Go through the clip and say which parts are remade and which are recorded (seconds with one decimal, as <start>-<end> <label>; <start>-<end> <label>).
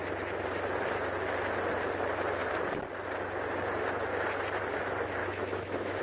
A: 0.0-5.2 recorded; 5.2-6.0 remade